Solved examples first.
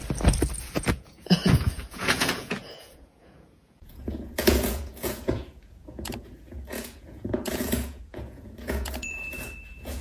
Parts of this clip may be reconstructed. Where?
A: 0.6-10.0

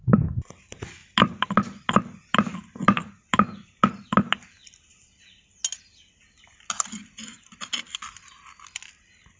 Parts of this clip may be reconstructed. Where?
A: none

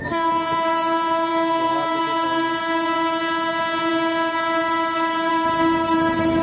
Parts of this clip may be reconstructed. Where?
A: 0.0-1.3; 2.0-3.9; 5.3-6.4